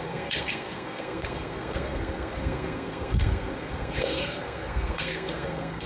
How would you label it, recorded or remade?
remade